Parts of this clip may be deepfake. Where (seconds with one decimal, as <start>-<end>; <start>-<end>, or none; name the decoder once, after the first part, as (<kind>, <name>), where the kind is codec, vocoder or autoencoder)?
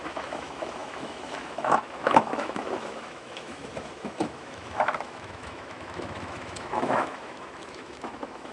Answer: 0.0-8.5 (autoencoder, DAC-VAE)